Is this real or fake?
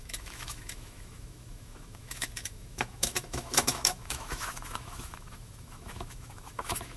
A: fake